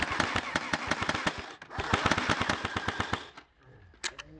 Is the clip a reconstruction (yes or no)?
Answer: no